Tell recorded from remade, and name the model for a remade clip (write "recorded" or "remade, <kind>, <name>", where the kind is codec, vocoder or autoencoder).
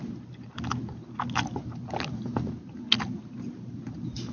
recorded